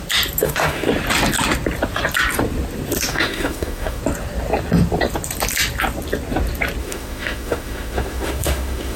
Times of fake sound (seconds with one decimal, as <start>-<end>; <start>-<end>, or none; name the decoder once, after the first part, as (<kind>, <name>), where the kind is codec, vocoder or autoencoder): 0.4-0.9 (autoencoder, DAC-VAE); 3.1-4.0; 6.8-9.0